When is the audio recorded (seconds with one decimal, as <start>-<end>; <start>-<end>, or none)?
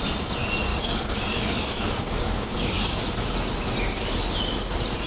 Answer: 0.0-0.7; 3.0-5.1